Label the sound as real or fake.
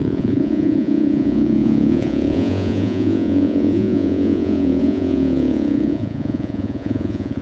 fake